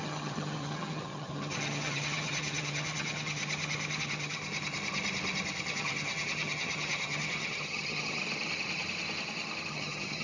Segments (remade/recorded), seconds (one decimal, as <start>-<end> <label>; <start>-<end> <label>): 0.0-3.4 remade; 3.4-4.0 recorded; 4.0-4.4 remade; 4.4-5.7 recorded; 5.7-8.2 remade; 8.2-9.7 recorded; 9.7-10.2 remade